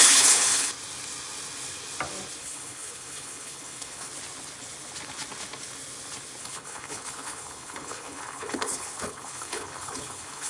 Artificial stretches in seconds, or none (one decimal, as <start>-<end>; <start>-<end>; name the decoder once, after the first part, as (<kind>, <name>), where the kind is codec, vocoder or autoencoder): 0.0-0.7 (codec, HILCodec); 2.4-4.1; 6.4-10.5